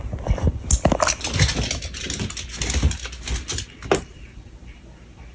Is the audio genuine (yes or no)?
yes